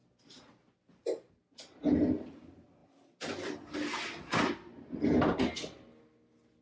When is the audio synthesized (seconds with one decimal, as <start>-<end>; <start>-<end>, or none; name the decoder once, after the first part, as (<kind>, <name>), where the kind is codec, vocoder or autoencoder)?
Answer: none